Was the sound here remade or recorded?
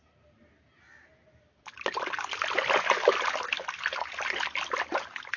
recorded